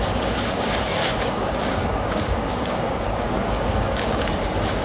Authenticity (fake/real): fake